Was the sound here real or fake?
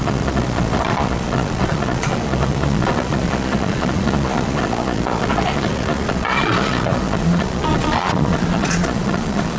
fake